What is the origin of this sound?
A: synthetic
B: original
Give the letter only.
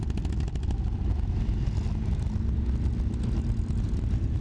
B